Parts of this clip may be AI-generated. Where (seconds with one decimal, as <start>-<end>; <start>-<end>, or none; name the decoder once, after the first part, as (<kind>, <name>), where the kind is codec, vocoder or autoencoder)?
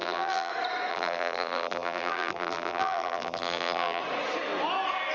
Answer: 0.0-0.5 (vocoder, BigVGAN v2); 0.9-4.0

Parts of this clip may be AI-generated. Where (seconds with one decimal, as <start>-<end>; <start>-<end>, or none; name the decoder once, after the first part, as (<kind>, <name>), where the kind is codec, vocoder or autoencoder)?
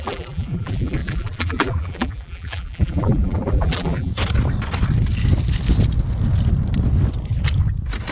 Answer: 0.0-4.1 (vocoder, BigVGAN v2)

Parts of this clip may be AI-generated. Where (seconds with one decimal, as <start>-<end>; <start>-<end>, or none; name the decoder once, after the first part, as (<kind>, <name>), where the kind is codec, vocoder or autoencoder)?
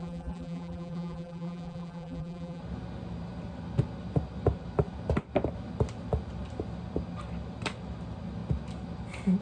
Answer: 0.0-2.6 (vocoder, BigVGAN v2)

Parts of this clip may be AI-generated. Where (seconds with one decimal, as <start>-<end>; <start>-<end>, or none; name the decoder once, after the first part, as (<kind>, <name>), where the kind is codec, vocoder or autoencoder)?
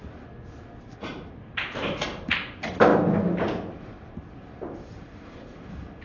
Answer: 0.8-2.9 (vocoder, BigVGAN v2); 3.8-6.0